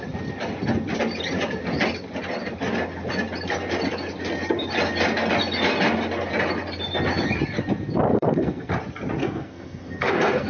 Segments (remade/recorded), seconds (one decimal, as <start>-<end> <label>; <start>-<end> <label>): 0.0-8.1 recorded; 8.1-8.7 remade; 8.7-9.2 recorded; 9.2-10.5 remade